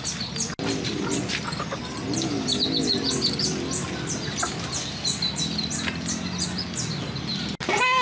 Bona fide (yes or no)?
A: yes